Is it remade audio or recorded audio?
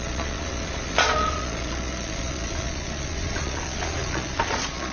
remade